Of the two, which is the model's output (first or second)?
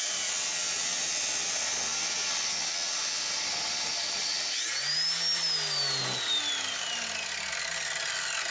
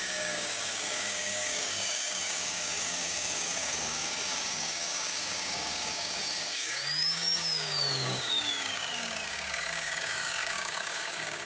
second